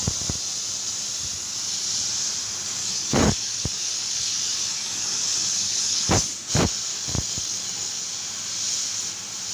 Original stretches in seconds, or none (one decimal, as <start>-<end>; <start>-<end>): 0.0-2.8; 6.1-6.9; 8.0-9.5

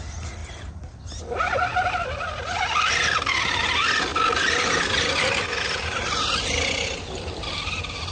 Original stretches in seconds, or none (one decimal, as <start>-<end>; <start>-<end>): 0.0-8.1